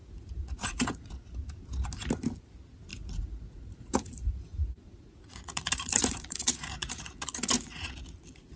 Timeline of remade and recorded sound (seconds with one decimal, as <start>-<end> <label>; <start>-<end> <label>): 0.0-1.1 remade; 1.1-2.9 recorded; 2.9-7.9 remade; 7.9-8.6 recorded